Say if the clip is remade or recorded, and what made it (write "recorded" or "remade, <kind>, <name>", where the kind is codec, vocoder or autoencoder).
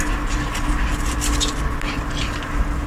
recorded